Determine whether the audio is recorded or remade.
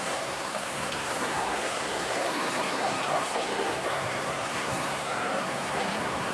remade